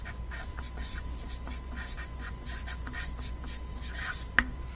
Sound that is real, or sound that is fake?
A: fake